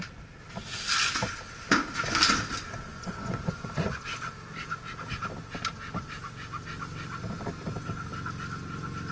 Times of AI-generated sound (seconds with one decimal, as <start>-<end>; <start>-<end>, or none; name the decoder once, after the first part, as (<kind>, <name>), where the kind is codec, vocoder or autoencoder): 2.9-4.0 (vocoder, Vocos)